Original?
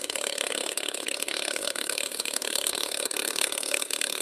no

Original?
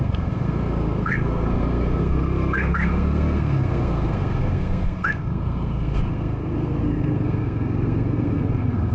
no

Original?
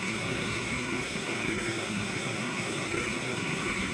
no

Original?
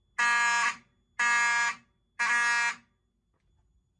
yes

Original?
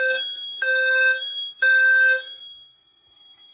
no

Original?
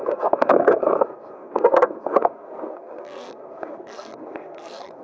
no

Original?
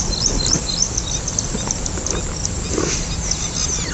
yes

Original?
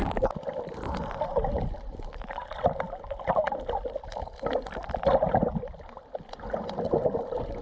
yes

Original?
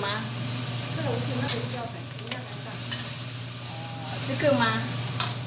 yes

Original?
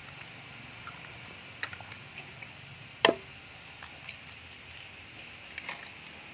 yes